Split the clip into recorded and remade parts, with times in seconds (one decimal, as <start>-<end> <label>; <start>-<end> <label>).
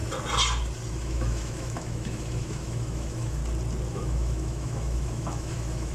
0.0-0.9 recorded; 0.9-3.4 remade; 3.4-3.9 recorded; 3.9-5.9 remade